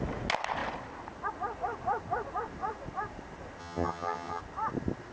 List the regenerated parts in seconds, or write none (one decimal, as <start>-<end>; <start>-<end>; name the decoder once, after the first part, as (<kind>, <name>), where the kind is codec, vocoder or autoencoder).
3.6-4.4 (vocoder, HiFi-GAN)

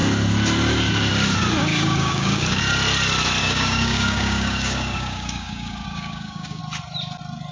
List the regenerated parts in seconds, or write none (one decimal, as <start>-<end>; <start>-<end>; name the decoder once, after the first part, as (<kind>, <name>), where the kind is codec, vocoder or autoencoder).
1.7-2.6 (codec, DAC); 3.4-6.6

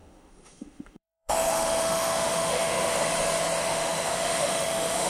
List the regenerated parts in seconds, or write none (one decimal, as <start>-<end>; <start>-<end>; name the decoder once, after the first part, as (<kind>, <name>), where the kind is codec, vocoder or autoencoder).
0.0-3.1 (autoencoder, DAC-VAE); 3.6-5.1

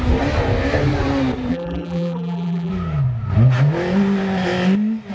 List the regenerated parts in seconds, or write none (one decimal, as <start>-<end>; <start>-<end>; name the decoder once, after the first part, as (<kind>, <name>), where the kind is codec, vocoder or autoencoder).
1.5-2.7 (vocoder, BigVGAN v2)